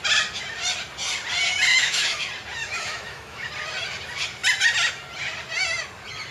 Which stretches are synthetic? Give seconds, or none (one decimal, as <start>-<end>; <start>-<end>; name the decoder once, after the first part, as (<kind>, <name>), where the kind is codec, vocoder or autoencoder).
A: 1.7-2.2 (autoencoder, DAC-VAE); 2.6-3.5